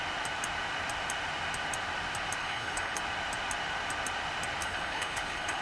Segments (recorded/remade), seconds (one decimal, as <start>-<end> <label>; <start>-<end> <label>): 0.0-2.4 recorded; 2.4-3.0 remade; 3.0-4.6 recorded; 4.6-5.6 remade